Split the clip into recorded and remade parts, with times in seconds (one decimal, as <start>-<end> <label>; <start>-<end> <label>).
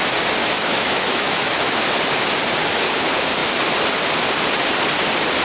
0.0-0.4 recorded; 0.4-1.9 remade; 1.9-5.4 recorded